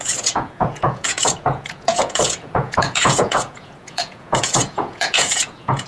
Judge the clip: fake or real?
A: fake